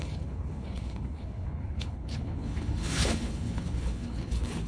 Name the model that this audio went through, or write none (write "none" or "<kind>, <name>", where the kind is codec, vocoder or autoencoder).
codec, HILCodec